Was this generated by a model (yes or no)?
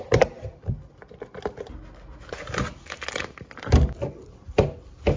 no